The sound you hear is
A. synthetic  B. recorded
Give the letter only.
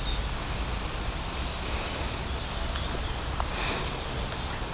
B